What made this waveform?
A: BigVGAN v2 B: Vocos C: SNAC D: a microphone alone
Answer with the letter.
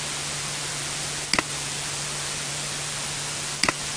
D